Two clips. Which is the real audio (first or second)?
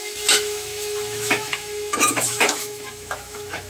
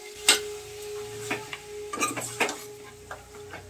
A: second